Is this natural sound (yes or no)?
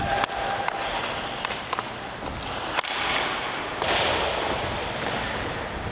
yes